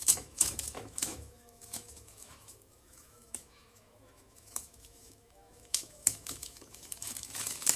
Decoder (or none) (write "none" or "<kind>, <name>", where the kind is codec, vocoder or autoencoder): autoencoder, DAC-VAE